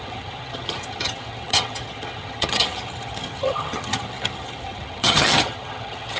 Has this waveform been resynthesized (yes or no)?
yes